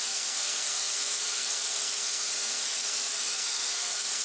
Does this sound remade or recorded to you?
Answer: remade